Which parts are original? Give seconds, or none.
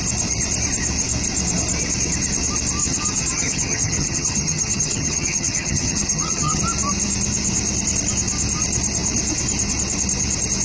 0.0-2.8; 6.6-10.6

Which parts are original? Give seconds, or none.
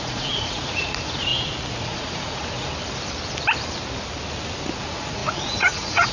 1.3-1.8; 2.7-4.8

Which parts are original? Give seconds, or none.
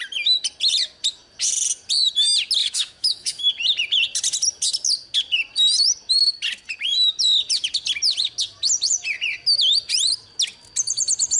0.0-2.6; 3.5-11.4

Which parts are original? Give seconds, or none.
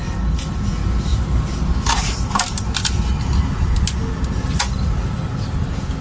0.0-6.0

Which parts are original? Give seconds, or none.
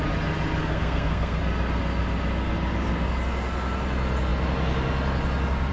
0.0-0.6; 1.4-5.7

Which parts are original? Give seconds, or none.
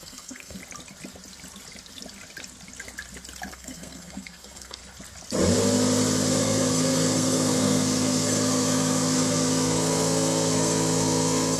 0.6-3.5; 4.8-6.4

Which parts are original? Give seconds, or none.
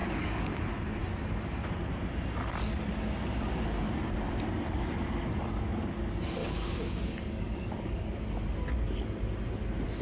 0.6-6.4; 8.1-10.0